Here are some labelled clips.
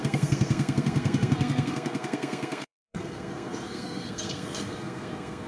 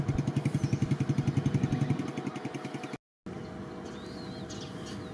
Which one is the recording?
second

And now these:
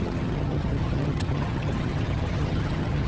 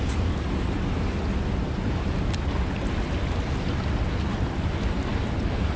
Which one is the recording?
second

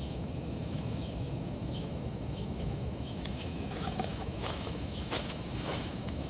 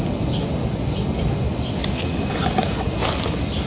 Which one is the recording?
second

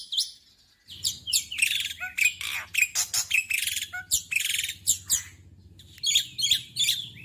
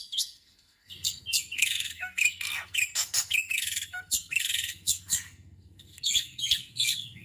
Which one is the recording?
first